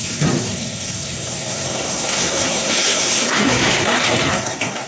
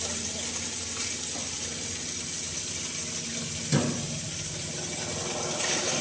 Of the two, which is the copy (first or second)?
first